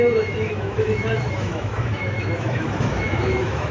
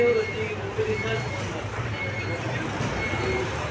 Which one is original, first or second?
second